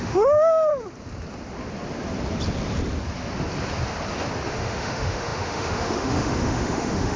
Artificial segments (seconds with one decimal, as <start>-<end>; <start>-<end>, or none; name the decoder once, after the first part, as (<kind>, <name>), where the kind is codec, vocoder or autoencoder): 0.0-0.7 (autoencoder, DAC-VAE); 4.5-7.2